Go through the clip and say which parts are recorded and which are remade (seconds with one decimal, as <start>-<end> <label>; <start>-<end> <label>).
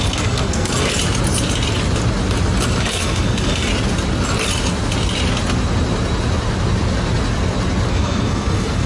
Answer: 0.0-0.9 remade; 0.9-2.8 recorded; 2.8-3.7 remade; 3.7-7.9 recorded; 7.9-8.9 remade